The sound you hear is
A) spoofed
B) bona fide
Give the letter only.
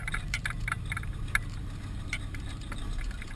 A